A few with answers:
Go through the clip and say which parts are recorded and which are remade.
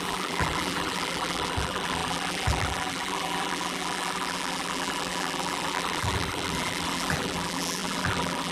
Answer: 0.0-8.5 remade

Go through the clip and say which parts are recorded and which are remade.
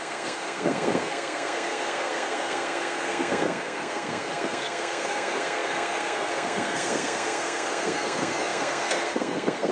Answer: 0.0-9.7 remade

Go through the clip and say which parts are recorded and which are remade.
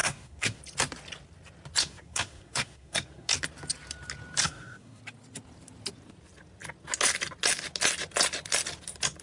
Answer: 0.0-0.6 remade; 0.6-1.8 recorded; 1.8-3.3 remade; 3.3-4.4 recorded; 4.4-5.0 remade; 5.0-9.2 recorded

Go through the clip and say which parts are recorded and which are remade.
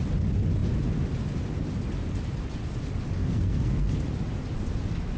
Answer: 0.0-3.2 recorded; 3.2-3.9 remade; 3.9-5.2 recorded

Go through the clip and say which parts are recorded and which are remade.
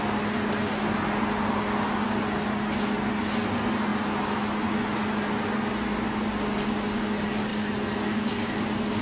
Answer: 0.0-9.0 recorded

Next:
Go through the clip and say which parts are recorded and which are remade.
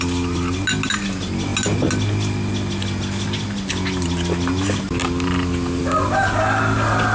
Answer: 0.0-7.1 recorded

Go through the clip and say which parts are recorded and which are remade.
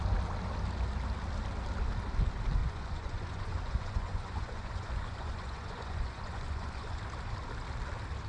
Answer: 0.0-2.6 recorded; 2.6-7.0 remade; 7.0-8.3 recorded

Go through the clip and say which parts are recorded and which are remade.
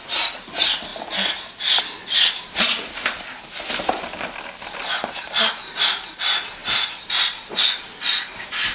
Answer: 0.0-6.6 recorded; 6.6-7.7 remade; 7.7-8.7 recorded